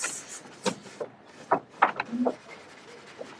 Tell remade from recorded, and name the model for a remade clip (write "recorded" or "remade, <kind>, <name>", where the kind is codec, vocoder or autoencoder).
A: recorded